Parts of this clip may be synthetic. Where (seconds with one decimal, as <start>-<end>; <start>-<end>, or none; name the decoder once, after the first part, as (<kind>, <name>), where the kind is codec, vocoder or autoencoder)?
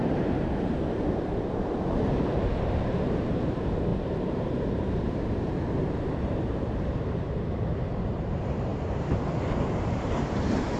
0.0-8.7 (vocoder, BigVGAN v2); 9.8-10.8